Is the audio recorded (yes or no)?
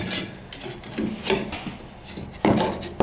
yes